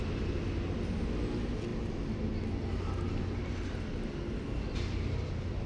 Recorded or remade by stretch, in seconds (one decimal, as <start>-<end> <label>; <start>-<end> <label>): 0.0-5.7 recorded

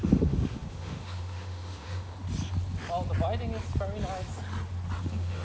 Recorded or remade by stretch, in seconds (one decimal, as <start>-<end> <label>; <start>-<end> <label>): 0.0-2.1 remade; 2.1-5.0 recorded; 5.0-5.4 remade

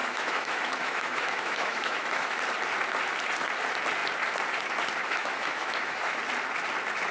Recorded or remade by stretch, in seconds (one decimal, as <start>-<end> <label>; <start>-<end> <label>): 0.0-2.4 remade; 2.4-5.0 recorded; 5.0-6.2 remade; 6.2-7.1 recorded

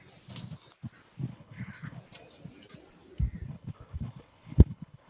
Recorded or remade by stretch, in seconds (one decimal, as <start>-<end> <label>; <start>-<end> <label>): 0.0-1.3 recorded; 1.3-2.0 remade; 2.0-3.5 recorded; 3.5-5.1 remade

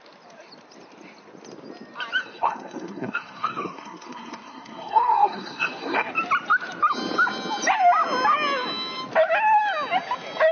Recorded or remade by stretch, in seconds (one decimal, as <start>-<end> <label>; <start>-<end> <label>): 0.0-2.2 recorded; 2.2-6.1 remade; 6.1-10.5 recorded

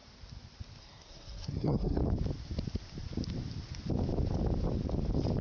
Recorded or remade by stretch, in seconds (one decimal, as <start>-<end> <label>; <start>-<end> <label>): 0.0-0.8 recorded; 0.8-2.0 remade; 2.0-5.4 recorded

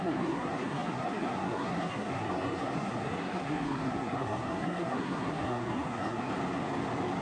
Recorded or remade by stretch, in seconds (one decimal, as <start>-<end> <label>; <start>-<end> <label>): 0.0-6.3 remade; 6.3-7.2 recorded